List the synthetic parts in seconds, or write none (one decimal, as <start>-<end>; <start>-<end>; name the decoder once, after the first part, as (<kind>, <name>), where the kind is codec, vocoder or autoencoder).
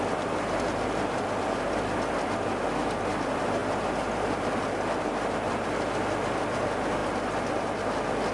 none